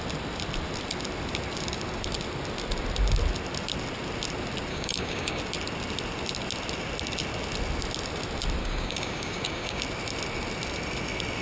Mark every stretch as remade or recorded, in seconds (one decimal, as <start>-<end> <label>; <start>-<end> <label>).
0.0-4.7 recorded; 4.7-5.4 remade; 5.4-8.6 recorded; 8.6-9.8 remade; 9.8-11.4 recorded